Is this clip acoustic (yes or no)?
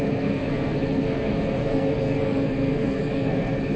no